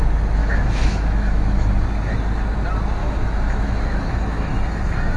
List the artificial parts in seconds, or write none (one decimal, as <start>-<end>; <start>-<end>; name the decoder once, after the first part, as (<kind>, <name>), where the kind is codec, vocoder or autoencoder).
0.4-1.7 (autoencoder, DAC-VAE); 3.0-4.5

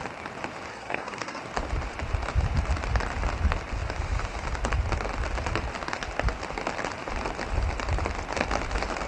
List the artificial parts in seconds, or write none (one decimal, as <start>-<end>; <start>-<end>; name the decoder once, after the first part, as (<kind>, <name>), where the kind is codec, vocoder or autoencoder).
0.7-1.4 (codec, SNAC)

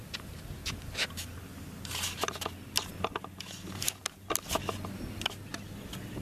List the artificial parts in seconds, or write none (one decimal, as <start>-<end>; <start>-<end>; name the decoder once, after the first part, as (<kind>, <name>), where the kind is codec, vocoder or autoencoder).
none

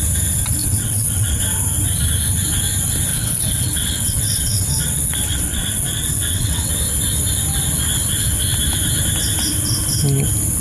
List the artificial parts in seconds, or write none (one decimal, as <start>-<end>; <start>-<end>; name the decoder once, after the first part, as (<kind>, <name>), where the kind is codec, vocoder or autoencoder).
0.6-1.4 (vocoder, WaveNeXt); 3.1-6.7